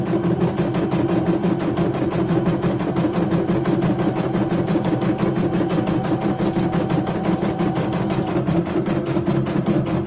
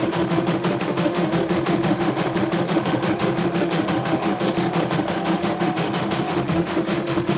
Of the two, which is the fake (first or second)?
second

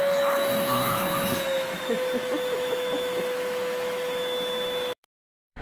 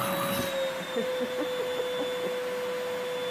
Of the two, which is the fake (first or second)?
first